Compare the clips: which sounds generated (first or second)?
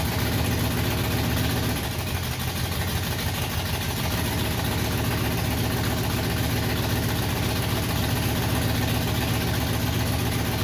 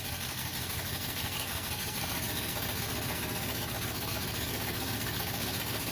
second